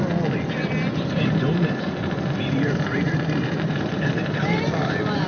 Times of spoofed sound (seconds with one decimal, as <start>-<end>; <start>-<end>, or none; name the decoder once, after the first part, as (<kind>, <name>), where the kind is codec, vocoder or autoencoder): 1.5-4.7 (vocoder, BigVGAN v2)